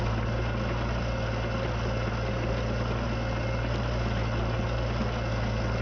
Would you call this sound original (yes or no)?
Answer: yes